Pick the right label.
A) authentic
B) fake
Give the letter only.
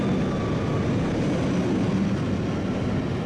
A